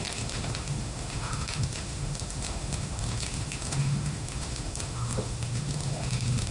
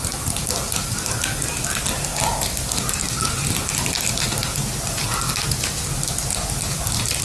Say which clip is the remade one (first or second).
first